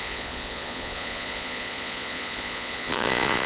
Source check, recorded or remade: remade